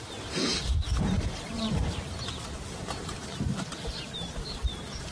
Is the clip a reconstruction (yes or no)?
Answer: yes